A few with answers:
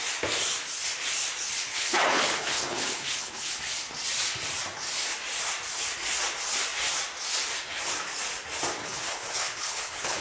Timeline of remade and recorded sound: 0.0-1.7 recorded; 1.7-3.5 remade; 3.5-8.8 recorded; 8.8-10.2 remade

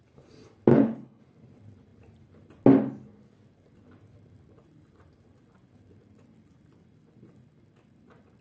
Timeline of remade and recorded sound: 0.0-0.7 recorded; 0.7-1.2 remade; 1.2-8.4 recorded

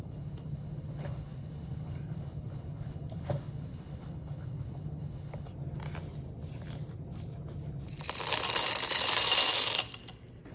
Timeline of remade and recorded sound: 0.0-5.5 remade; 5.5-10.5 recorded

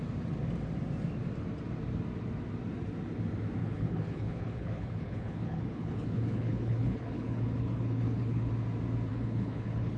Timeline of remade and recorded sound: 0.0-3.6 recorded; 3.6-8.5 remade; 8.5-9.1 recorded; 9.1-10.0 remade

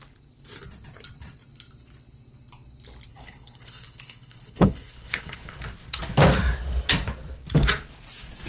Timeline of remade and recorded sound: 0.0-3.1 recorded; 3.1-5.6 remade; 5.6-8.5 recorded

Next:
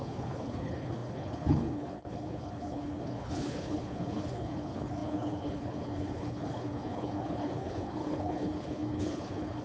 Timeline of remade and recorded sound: 0.0-9.6 remade

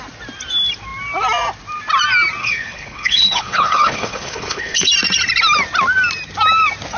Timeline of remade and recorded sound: 0.0-2.4 recorded; 2.4-4.9 remade; 4.9-7.0 recorded

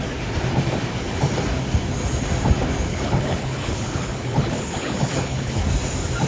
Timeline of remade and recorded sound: 0.0-2.9 recorded; 2.9-5.6 remade; 5.6-6.3 recorded